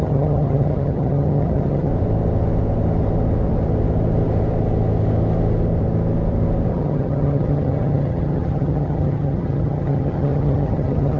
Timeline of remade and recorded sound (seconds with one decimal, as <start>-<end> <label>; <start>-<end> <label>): 0.0-1.9 remade; 1.9-6.7 recorded; 6.7-11.2 remade